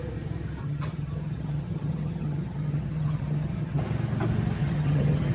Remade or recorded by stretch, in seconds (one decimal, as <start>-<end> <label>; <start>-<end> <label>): 0.0-0.6 recorded; 0.6-3.8 remade; 3.8-4.6 recorded; 4.6-5.3 remade